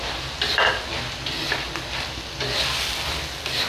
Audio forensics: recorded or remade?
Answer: recorded